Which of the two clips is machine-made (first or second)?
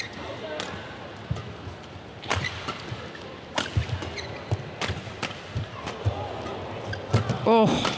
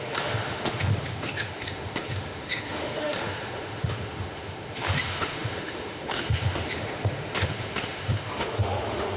second